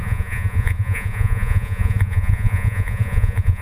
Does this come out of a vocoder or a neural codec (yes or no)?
yes